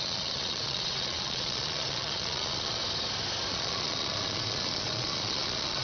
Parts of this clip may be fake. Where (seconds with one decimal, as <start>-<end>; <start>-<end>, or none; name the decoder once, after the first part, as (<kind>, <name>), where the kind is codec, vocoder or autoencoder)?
0.0-2.8 (vocoder, Vocos); 3.5-5.8